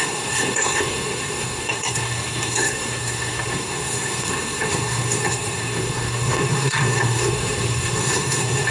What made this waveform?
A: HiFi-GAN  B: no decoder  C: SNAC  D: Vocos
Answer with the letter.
C